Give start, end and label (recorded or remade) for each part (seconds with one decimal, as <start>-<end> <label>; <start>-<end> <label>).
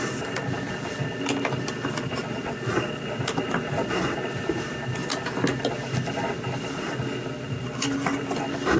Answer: 0.0-8.8 recorded